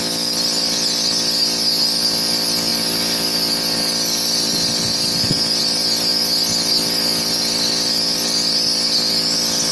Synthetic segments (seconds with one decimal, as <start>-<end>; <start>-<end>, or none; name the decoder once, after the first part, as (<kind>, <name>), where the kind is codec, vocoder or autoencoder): none